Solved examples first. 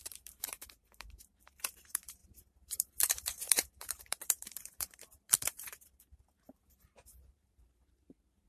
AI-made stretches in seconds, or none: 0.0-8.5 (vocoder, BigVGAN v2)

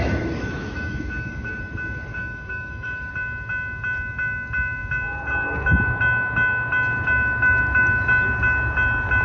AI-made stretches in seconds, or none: 0.0-1.6 (autoencoder, DAC-VAE); 2.1-3.1

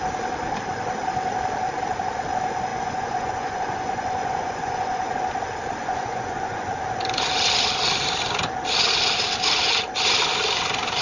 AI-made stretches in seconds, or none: 2.7-5.1 (vocoder, Vocos); 5.8-6.7

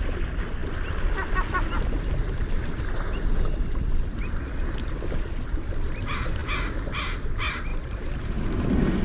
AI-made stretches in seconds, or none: 7.7-9.0 (vocoder, BigVGAN v2)